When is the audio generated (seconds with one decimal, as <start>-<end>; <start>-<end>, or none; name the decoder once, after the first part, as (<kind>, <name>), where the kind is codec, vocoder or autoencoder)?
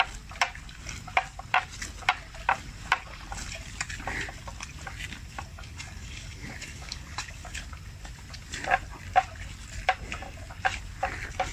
5.5-7.6 (codec, DAC)